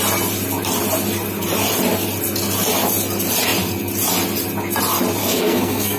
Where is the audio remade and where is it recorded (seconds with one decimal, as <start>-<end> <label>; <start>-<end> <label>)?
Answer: 0.0-5.2 recorded; 5.2-6.0 remade